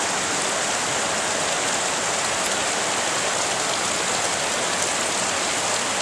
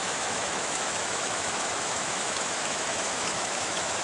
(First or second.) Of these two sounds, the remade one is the second